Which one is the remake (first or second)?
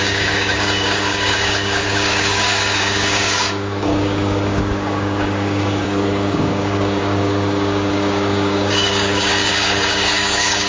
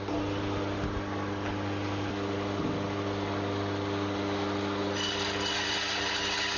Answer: first